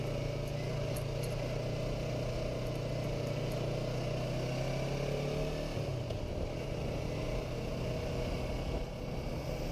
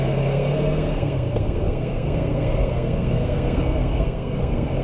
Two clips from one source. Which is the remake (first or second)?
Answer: second